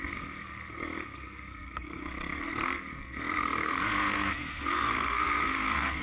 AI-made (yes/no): yes